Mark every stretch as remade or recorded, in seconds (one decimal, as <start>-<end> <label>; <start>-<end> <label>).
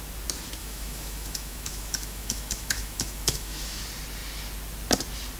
0.0-0.6 recorded; 0.6-3.8 remade; 3.8-5.4 recorded